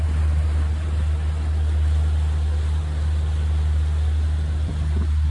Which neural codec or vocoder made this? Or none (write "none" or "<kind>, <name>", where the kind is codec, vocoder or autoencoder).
none